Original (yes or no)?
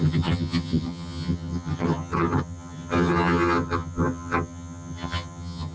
no